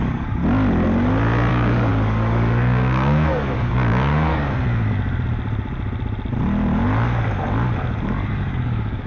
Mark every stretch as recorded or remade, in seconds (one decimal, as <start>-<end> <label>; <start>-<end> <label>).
0.0-0.4 remade; 0.4-1.5 recorded; 1.5-4.3 remade; 4.3-8.3 recorded; 8.3-9.1 remade